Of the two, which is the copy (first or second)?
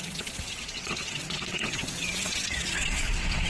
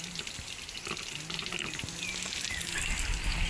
first